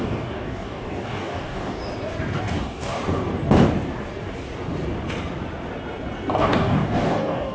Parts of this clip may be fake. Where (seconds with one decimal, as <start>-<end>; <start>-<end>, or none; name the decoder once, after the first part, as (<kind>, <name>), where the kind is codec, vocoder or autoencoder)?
0.0-1.8 (codec, DAC); 2.4-3.0; 6.4-7.5

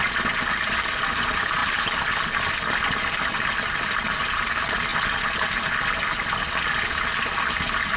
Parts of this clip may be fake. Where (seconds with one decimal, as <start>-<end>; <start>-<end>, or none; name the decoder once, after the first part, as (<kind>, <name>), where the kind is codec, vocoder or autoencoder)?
0.0-4.9 (vocoder, BigVGAN v2)

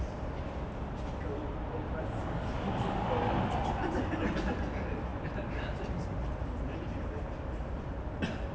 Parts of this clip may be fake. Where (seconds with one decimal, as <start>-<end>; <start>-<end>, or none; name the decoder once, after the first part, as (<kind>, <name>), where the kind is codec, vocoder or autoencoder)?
2.2-3.1 (codec, DAC)

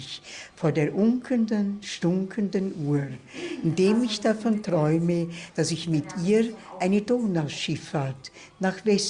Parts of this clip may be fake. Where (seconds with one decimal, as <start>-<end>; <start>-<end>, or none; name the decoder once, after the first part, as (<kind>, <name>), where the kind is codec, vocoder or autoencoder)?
none

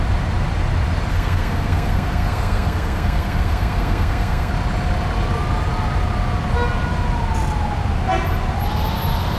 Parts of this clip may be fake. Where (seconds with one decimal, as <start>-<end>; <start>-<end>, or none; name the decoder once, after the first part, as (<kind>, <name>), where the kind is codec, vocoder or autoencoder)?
1.1-4.5 (codec, SNAC)